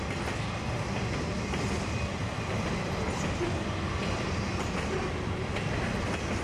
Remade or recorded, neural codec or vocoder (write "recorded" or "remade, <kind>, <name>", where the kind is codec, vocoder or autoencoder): recorded